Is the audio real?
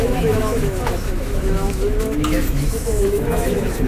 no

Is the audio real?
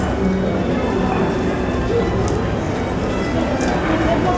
yes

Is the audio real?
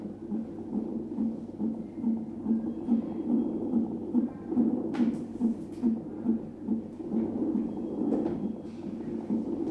yes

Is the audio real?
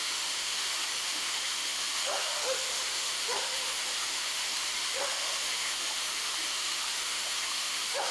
no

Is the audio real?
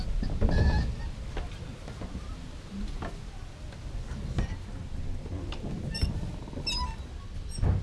yes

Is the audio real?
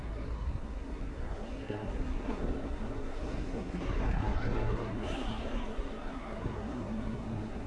no